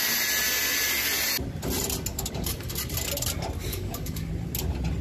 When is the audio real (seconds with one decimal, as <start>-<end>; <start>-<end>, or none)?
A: 0.0-2.1; 2.7-3.7; 4.3-5.0